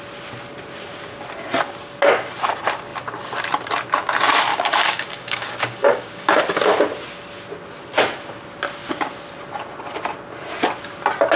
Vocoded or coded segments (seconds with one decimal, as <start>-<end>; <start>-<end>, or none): 4.5-6.4